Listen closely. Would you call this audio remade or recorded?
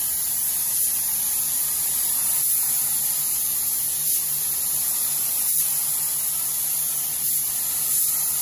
recorded